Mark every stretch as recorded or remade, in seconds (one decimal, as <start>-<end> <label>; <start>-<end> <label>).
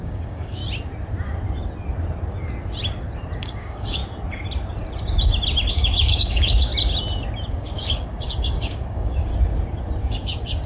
0.0-0.6 remade; 0.6-3.4 recorded; 3.4-4.0 remade; 4.0-5.7 recorded; 5.7-6.7 remade; 6.7-7.5 recorded; 7.5-9.3 remade; 9.3-10.0 recorded; 10.0-10.7 remade